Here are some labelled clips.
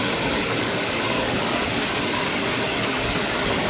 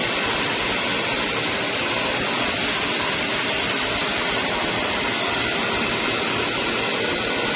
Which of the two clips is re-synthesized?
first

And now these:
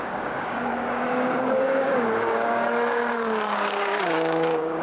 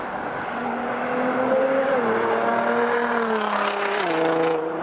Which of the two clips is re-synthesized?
first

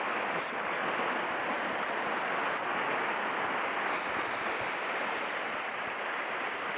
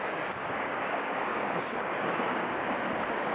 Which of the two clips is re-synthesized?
second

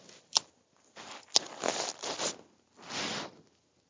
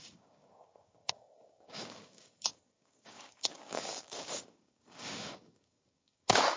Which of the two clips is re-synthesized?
second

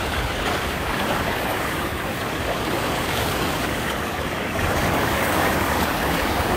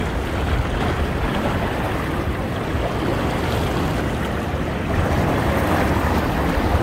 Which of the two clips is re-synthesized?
first